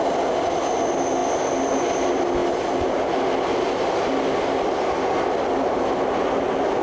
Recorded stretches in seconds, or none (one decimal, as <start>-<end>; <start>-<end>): 0.0-6.8